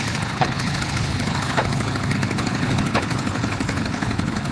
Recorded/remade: remade